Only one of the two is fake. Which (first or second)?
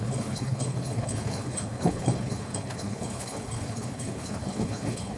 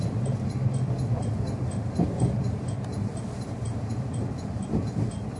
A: first